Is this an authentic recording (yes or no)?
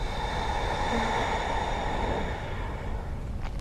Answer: yes